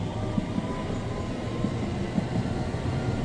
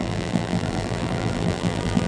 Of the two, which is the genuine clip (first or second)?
first